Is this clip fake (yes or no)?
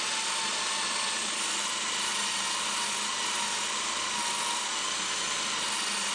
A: no